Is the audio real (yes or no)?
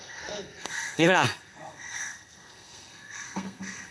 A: no